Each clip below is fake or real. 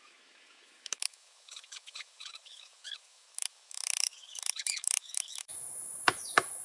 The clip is fake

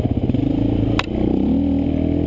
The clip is real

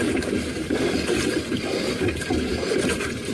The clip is real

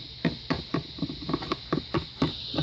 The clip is real